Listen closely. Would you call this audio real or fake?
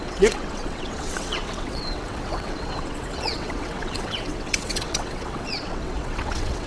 fake